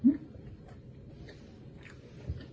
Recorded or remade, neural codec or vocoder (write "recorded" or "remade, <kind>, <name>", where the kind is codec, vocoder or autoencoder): remade, vocoder, BigVGAN v2